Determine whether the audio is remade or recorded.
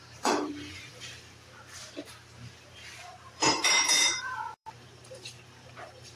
remade